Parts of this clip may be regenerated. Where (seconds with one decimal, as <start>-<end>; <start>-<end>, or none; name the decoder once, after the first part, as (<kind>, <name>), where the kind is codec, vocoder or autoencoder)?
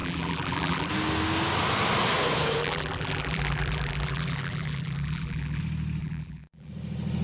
0.0-0.9 (vocoder, BigVGAN v2); 2.6-5.6; 6.0-6.7